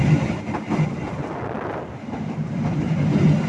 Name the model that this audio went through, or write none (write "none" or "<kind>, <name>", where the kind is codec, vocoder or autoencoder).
none